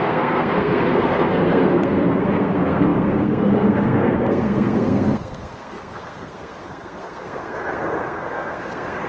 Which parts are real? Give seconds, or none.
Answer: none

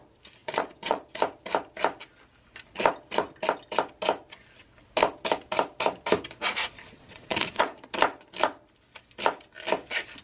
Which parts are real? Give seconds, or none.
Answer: 0.0-0.4; 1.0-6.8; 7.9-10.2

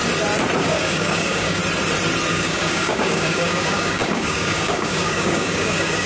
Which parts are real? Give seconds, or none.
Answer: 0.0-0.6; 1.6-2.3

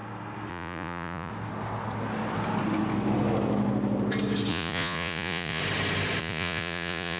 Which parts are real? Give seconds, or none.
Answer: 0.0-0.5; 1.3-4.5; 5.6-6.2

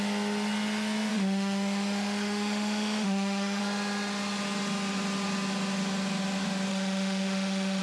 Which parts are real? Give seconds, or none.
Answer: 0.0-1.1; 3.6-6.7